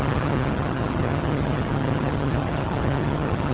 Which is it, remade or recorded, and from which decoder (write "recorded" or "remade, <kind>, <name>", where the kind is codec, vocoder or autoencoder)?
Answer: remade, vocoder, HiFi-GAN